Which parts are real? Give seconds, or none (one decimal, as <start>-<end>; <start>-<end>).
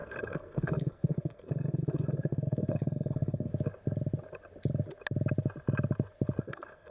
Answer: 3.5-6.4